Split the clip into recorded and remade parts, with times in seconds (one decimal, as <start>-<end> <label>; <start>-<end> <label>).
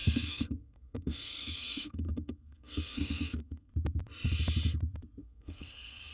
0.0-3.7 remade; 3.7-5.2 recorded; 5.2-6.1 remade